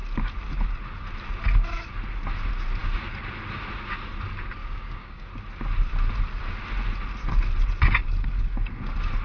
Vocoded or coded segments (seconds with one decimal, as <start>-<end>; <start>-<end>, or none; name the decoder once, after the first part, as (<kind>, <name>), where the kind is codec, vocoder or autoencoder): 4.6-5.3 (codec, DAC)